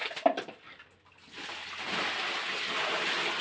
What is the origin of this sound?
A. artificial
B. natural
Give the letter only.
B